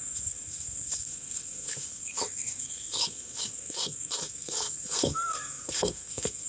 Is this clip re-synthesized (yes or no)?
yes